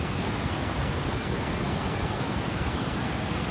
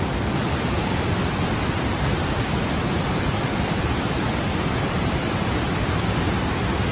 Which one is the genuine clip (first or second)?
second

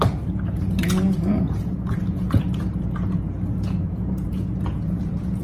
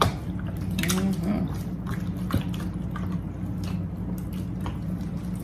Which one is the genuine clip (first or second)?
second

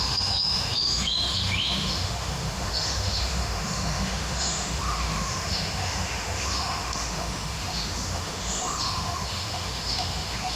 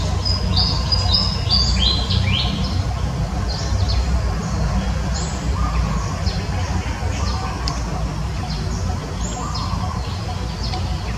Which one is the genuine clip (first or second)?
second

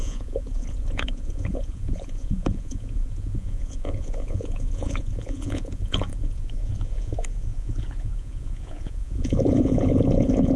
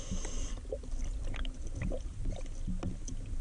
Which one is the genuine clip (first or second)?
second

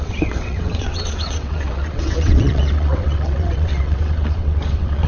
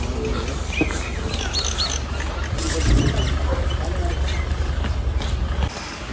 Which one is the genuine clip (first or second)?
second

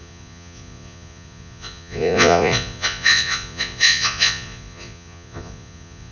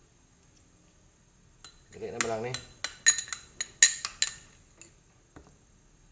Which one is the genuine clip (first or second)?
second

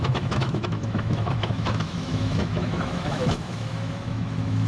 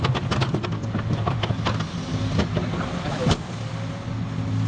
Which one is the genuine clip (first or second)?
second